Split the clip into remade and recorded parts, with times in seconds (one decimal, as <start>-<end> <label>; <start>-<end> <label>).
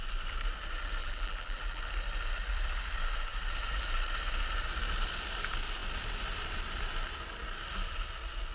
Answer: 0.0-1.0 recorded; 1.0-1.8 remade; 1.8-8.5 recorded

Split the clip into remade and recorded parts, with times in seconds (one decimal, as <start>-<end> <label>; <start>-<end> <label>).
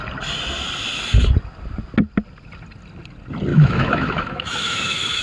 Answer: 0.0-3.5 recorded; 3.5-5.2 remade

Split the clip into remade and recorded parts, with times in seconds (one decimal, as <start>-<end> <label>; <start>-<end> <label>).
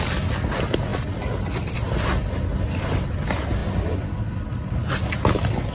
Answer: 0.0-5.7 recorded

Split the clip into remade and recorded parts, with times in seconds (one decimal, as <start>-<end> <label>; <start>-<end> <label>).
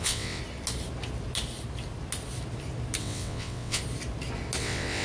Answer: 0.0-0.4 remade; 0.4-3.0 recorded; 3.0-3.8 remade; 3.8-4.6 recorded; 4.6-5.0 remade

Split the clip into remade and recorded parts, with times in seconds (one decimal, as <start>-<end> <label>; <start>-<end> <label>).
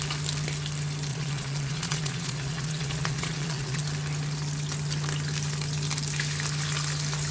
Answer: 0.0-1.1 recorded; 1.1-3.8 remade; 3.8-7.3 recorded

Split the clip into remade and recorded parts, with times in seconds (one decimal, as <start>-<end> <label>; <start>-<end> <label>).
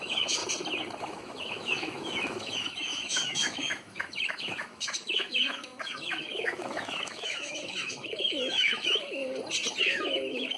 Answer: 0.0-0.4 remade; 0.4-1.0 recorded; 1.0-9.2 remade; 9.2-9.8 recorded; 9.8-10.6 remade